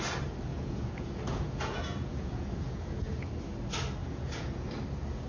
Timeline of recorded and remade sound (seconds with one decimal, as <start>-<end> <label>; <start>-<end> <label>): 0.0-0.5 recorded; 0.5-3.3 remade; 3.3-4.0 recorded; 4.0-4.7 remade; 4.7-5.3 recorded